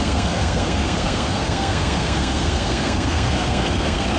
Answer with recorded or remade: remade